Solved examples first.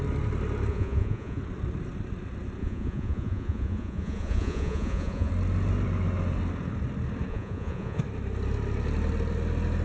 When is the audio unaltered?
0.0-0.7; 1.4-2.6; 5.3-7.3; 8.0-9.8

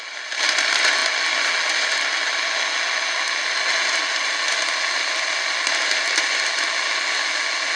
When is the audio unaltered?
0.0-7.8

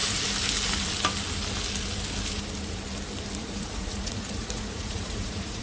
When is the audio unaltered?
0.0-3.4

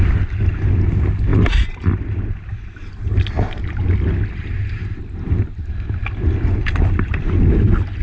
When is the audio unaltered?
0.0-8.0

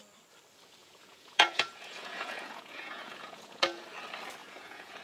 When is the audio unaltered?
0.0-0.8; 3.8-4.4

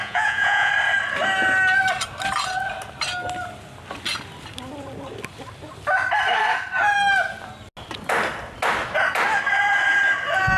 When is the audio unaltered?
0.7-10.6